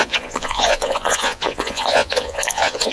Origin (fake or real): fake